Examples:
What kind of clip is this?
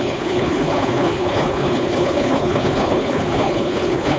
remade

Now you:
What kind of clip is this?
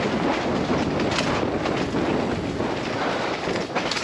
recorded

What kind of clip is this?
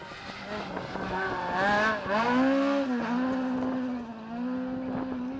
recorded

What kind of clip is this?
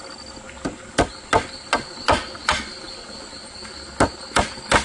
recorded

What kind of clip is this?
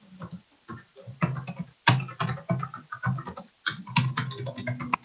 recorded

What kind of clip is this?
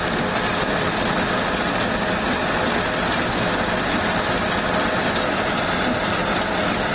recorded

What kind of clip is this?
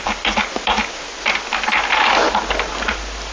recorded